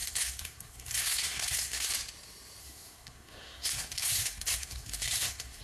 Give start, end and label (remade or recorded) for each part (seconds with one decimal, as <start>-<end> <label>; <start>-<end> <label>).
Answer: 0.0-1.9 remade; 1.9-2.6 recorded; 2.6-5.6 remade